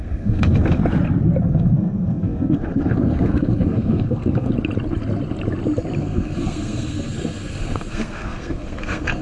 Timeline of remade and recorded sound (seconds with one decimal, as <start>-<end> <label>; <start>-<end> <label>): 0.0-0.8 remade; 0.8-1.4 recorded; 1.4-4.5 remade; 4.5-6.0 recorded; 6.0-9.2 remade